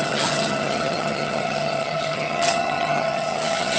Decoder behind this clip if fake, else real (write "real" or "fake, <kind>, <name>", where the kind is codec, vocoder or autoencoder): fake, vocoder, HiFi-GAN